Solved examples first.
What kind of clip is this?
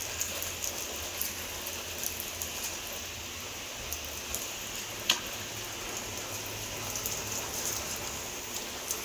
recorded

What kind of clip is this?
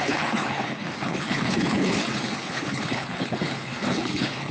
remade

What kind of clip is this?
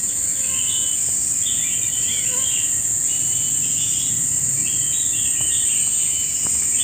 recorded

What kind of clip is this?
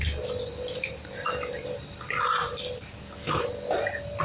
remade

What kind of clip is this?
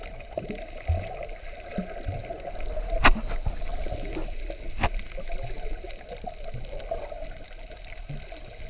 recorded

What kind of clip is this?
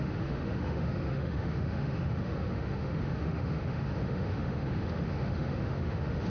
remade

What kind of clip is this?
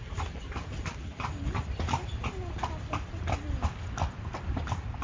recorded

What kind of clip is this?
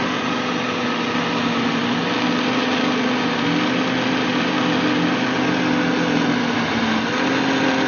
recorded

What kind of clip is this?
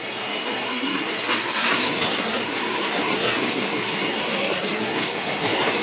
remade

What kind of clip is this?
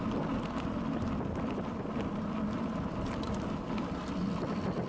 recorded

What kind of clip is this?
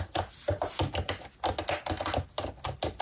recorded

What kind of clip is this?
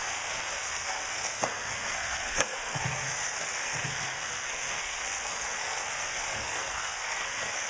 remade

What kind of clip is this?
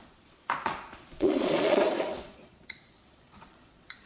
remade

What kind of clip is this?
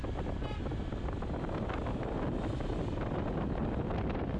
recorded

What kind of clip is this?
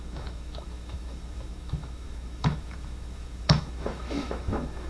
remade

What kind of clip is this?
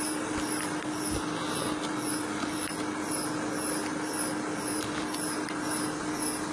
recorded